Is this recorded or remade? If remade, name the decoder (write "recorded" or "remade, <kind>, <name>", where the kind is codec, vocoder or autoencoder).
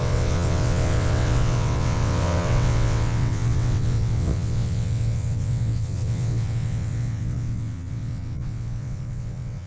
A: remade, vocoder, WaveNeXt